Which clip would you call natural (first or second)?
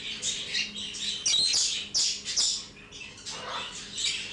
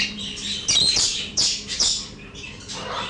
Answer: first